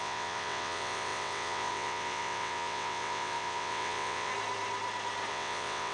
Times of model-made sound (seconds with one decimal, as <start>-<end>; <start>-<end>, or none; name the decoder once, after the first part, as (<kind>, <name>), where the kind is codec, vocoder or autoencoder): 0.0-4.3 (vocoder, WaveNeXt); 5.3-5.9